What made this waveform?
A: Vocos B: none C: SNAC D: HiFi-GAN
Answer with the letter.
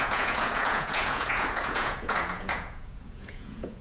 A